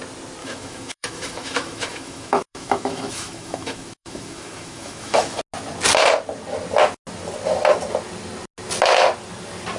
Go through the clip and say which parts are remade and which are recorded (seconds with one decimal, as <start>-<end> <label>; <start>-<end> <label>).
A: 0.0-0.4 recorded; 0.4-5.4 remade; 5.4-9.8 recorded